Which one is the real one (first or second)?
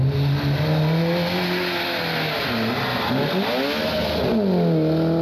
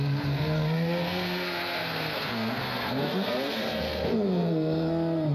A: first